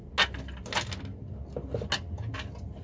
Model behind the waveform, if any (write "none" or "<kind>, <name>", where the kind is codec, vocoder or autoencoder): none